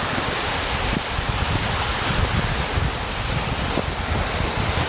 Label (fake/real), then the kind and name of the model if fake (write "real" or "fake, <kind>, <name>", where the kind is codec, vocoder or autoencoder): real